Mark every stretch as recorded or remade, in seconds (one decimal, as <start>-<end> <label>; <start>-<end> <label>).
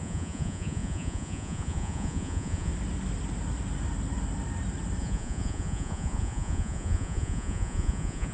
0.0-2.7 remade; 2.7-5.0 recorded; 5.0-8.3 remade